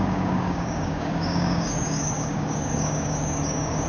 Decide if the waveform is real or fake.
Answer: fake